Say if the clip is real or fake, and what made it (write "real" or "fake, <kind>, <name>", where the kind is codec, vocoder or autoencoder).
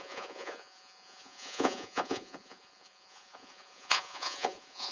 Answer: fake, vocoder, Vocos